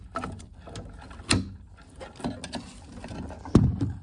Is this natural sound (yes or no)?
yes